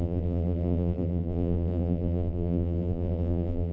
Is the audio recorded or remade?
remade